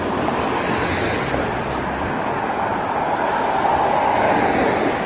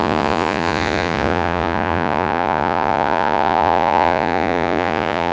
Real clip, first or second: first